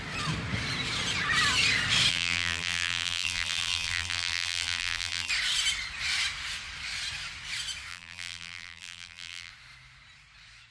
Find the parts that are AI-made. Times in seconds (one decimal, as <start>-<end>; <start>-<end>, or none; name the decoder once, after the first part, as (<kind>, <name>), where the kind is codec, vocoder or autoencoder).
2.1-5.3 (vocoder, BigVGAN v2); 7.9-9.5